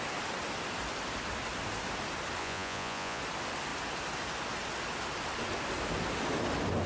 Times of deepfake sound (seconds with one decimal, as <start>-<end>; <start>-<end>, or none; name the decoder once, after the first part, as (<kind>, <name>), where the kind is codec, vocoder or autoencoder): 2.4-3.2 (vocoder, Vocos)